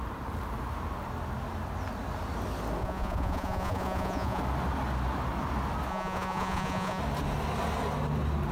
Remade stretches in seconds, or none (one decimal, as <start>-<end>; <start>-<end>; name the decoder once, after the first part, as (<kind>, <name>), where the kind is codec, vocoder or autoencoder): 2.8-4.4 (vocoder, Vocos); 5.9-7.0